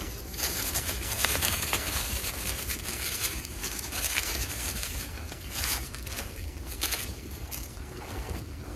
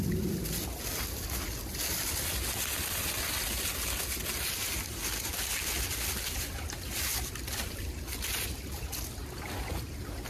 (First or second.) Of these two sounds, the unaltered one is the second